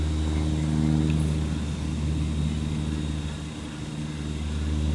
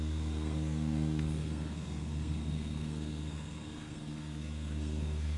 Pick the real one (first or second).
first